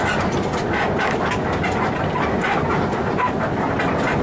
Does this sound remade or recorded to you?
recorded